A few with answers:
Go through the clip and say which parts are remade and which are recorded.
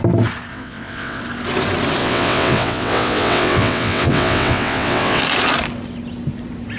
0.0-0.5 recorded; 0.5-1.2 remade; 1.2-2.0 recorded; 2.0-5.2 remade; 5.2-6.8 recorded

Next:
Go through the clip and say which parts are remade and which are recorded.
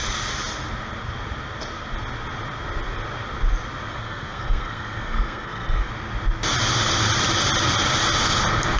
0.0-3.9 recorded; 3.9-5.9 remade; 5.9-8.8 recorded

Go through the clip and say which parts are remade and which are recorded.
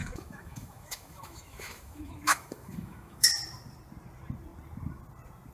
0.0-3.3 remade; 3.3-5.5 recorded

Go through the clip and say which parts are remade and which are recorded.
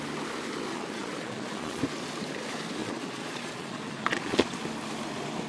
0.0-0.7 recorded; 0.7-1.8 remade; 1.8-2.8 recorded; 2.8-4.6 remade; 4.6-5.5 recorded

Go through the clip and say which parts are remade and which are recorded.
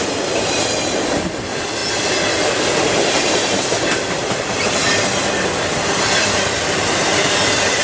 0.0-7.8 recorded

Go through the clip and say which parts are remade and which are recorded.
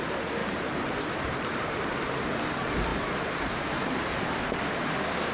0.0-0.4 recorded; 0.4-1.8 remade; 1.8-2.9 recorded; 2.9-4.1 remade; 4.1-5.3 recorded